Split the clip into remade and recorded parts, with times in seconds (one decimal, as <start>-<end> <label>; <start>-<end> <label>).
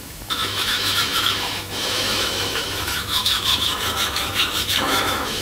0.0-5.4 remade